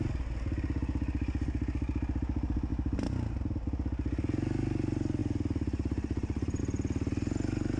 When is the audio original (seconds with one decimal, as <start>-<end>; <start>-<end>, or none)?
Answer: 0.0-5.2; 6.6-7.8